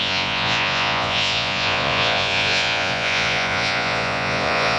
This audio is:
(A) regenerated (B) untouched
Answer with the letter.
A